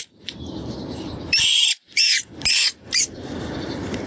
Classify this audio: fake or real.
fake